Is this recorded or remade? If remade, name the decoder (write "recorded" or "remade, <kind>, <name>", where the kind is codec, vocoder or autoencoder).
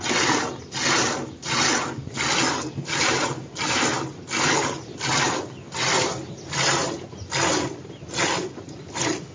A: recorded